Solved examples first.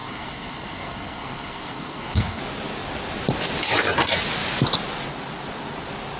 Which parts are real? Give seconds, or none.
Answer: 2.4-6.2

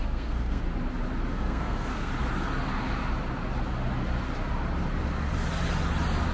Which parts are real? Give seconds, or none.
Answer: 0.6-1.3; 2.1-6.3

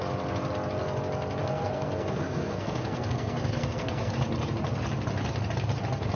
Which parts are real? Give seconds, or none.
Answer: 0.0-1.4; 4.1-6.1